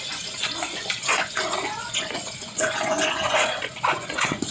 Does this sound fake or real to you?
fake